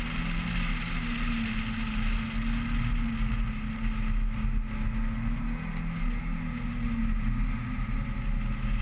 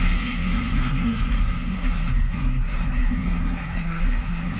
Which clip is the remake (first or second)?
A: second